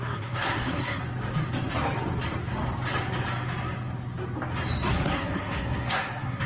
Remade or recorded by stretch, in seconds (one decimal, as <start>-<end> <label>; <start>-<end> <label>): 0.0-1.0 remade; 1.0-4.9 recorded; 4.9-6.5 remade